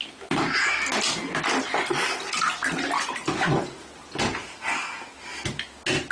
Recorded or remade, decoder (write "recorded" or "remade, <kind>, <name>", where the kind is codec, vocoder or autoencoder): recorded